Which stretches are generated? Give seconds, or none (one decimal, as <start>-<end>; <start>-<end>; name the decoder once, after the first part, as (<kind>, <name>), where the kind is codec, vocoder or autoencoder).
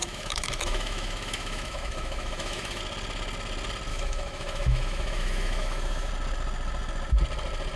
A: 0.0-2.8 (autoencoder, DAC-VAE); 3.9-6.1